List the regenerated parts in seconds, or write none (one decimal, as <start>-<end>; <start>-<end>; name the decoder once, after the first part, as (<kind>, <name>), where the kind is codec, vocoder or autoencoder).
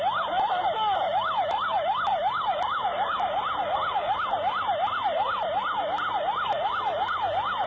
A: none